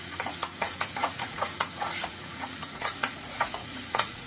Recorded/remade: remade